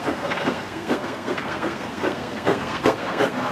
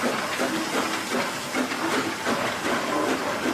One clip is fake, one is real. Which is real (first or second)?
second